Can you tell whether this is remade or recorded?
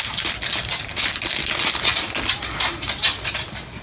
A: recorded